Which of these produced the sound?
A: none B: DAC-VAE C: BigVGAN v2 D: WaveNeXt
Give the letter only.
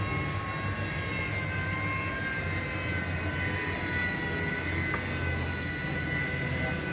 A